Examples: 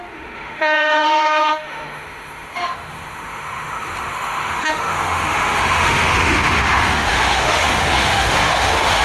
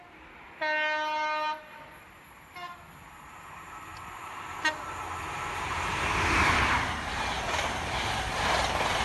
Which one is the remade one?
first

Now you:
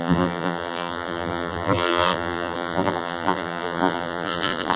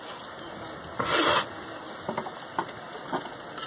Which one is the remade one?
first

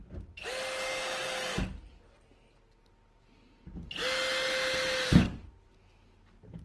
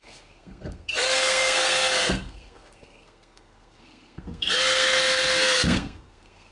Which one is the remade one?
second